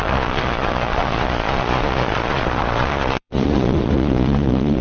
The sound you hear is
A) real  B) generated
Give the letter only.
B